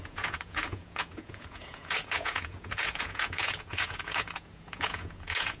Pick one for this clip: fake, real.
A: fake